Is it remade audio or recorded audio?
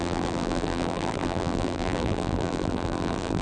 remade